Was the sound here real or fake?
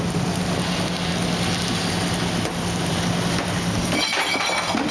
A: real